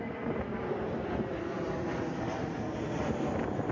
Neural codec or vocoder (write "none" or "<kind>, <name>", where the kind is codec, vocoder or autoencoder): none